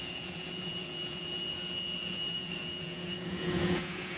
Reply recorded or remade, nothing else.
remade